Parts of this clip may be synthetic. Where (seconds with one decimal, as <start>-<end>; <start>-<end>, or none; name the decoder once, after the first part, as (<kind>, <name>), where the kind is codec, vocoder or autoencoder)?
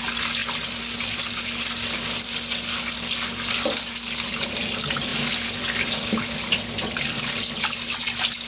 none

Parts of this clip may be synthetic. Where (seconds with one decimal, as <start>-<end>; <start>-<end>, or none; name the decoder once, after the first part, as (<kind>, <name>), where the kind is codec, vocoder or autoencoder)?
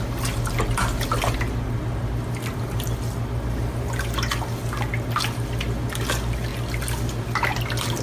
none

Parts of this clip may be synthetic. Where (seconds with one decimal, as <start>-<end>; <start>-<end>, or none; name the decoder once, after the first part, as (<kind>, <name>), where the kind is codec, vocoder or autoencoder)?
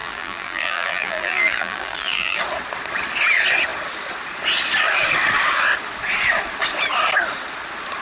0.0-2.4 (vocoder, BigVGAN v2)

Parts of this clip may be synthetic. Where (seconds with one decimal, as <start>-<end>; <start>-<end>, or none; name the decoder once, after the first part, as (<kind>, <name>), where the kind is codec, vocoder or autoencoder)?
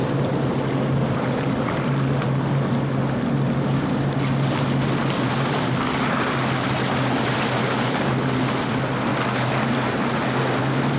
none